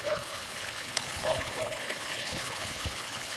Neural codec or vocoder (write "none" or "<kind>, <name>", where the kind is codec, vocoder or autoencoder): codec, HILCodec